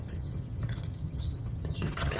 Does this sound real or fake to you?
fake